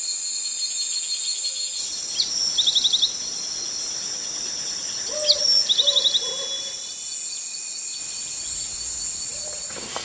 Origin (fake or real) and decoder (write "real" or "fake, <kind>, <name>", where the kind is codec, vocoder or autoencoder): real